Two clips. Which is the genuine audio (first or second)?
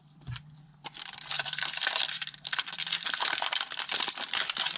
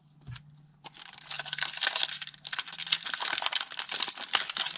second